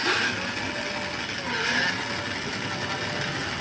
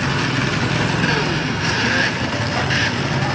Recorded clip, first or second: first